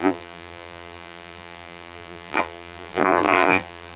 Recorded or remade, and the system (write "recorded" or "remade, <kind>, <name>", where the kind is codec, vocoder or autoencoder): remade, vocoder, BigVGAN v2